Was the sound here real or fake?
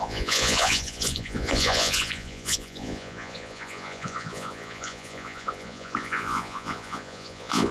fake